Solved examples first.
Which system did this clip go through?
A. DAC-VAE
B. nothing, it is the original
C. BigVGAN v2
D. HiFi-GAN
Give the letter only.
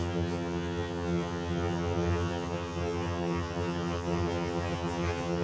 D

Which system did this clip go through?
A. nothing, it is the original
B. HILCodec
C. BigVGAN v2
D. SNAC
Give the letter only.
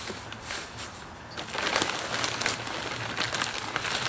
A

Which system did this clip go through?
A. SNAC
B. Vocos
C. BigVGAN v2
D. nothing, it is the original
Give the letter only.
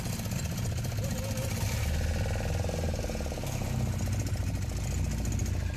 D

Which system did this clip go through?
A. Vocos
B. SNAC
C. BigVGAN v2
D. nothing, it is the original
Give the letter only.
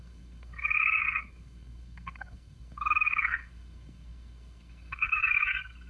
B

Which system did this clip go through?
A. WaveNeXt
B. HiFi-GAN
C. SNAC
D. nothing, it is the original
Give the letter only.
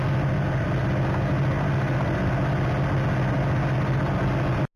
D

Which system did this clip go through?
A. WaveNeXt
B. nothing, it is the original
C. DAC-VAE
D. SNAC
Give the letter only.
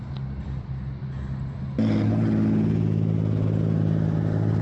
B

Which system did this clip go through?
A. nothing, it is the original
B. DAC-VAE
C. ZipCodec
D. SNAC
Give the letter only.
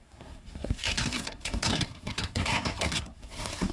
D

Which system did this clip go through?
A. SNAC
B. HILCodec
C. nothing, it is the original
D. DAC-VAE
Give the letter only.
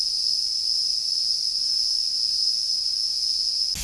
C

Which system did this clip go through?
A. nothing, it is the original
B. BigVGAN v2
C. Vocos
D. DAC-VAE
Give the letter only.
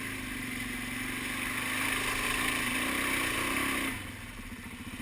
A